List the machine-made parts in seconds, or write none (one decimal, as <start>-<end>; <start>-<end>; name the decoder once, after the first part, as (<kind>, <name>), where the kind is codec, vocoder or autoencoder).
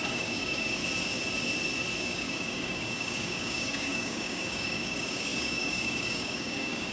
0.0-0.8 (codec, DAC); 2.0-6.9